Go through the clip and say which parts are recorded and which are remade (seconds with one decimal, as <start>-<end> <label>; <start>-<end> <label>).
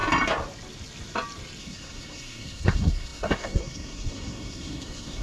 0.0-1.6 recorded; 1.6-5.2 remade